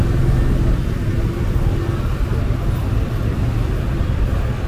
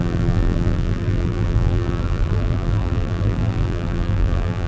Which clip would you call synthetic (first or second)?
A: second